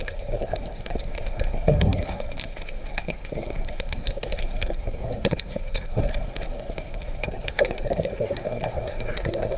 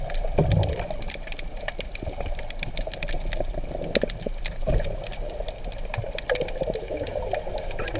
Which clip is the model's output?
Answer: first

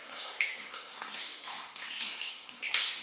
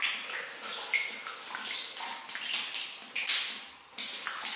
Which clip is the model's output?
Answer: first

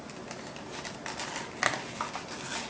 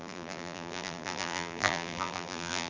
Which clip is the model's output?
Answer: second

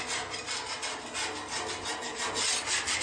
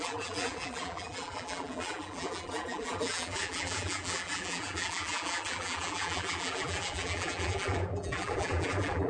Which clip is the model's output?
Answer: second